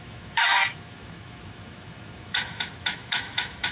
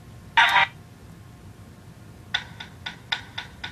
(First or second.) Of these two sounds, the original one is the second